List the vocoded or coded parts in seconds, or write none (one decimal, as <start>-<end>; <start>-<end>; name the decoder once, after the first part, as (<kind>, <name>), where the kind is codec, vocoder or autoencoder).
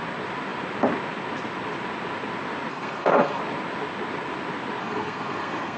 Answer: 2.7-3.4 (codec, SNAC); 4.8-5.8